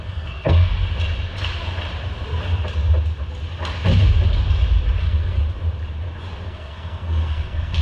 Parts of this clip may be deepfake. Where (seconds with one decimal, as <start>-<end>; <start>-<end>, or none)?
0.0-0.7; 5.0-5.4; 6.5-7.8